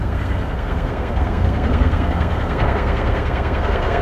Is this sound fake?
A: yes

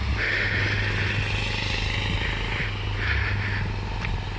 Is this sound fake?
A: no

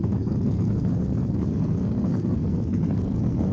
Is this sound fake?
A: yes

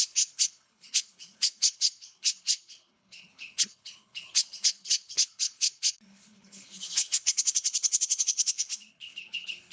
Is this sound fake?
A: yes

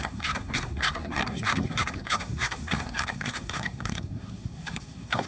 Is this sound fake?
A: yes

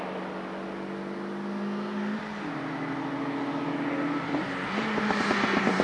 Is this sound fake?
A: no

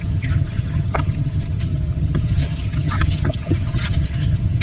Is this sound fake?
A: yes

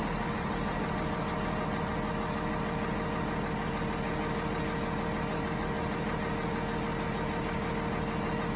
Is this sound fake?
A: no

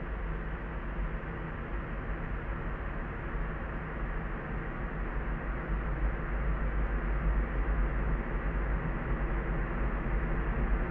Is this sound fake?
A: no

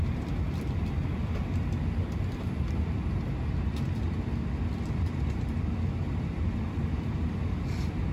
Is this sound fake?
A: no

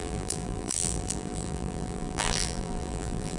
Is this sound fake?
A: yes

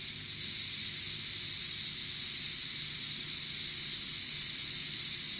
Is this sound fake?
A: no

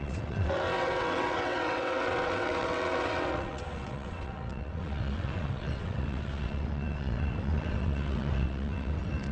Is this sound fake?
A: yes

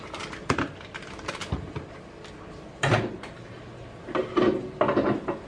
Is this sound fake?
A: no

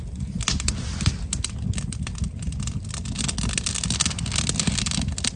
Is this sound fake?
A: no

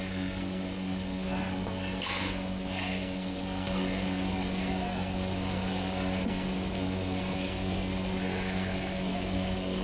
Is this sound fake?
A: yes